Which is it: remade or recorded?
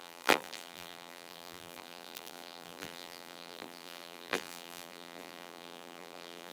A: remade